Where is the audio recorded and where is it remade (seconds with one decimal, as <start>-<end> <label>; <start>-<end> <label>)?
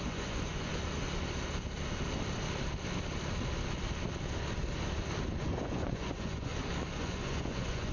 0.0-0.7 remade; 0.7-5.4 recorded; 5.4-6.5 remade; 6.5-7.0 recorded; 7.0-7.9 remade